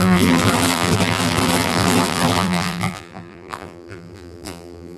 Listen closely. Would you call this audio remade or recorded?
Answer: remade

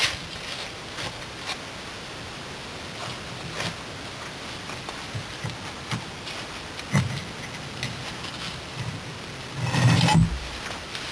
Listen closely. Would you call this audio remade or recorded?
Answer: recorded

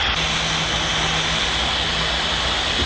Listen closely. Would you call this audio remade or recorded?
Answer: recorded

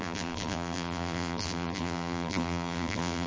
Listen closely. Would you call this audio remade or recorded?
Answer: remade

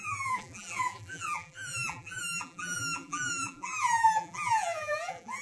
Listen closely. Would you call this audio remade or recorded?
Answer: remade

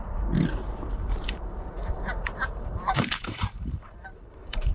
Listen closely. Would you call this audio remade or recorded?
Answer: remade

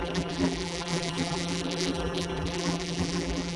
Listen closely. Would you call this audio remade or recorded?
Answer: remade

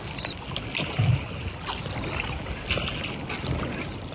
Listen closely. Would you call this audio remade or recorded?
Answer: recorded